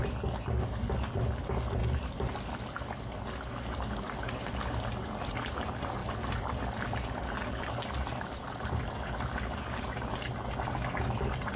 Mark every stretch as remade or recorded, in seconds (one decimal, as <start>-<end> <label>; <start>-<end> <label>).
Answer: 0.0-11.6 recorded